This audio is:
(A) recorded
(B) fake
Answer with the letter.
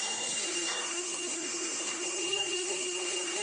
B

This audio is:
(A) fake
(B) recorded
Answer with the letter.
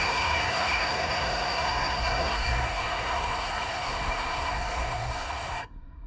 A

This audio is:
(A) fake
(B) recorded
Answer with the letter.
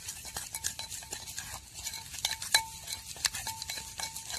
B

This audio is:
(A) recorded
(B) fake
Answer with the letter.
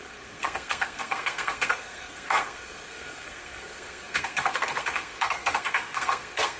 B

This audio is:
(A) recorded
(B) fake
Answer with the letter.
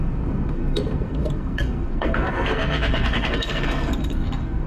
B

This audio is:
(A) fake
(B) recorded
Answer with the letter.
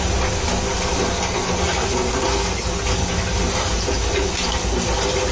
B